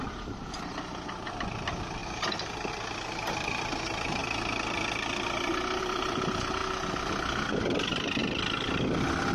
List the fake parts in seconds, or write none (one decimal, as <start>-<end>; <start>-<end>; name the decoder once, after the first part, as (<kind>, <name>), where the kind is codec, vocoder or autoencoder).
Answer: 0.0-4.2 (vocoder, BigVGAN v2); 5.8-6.6; 7.6-8.2